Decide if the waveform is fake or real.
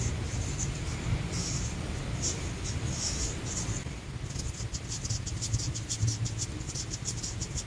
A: real